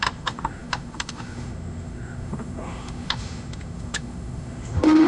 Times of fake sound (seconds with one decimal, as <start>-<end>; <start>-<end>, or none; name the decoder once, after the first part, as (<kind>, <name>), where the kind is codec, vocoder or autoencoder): 0.0-5.1 (autoencoder, DAC-VAE)